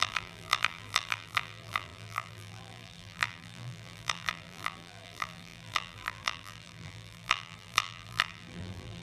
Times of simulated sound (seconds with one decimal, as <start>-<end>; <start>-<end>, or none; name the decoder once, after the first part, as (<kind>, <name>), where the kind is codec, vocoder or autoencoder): 0.0-9.0 (vocoder, BigVGAN v2)